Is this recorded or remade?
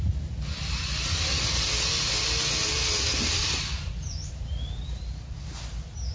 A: recorded